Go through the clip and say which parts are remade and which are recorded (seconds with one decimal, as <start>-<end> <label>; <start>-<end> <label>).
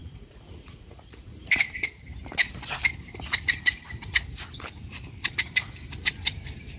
0.0-1.5 remade; 1.5-6.8 recorded